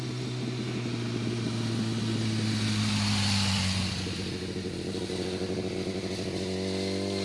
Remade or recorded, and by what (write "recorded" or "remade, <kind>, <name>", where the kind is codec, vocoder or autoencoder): recorded